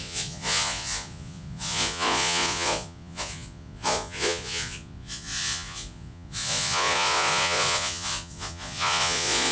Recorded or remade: remade